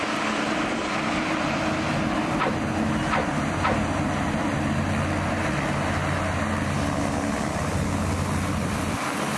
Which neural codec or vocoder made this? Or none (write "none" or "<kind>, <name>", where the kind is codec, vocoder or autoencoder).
none